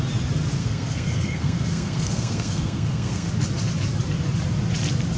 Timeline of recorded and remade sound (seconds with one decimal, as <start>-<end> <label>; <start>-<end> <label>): 0.0-0.6 recorded; 0.6-3.3 remade; 3.3-5.2 recorded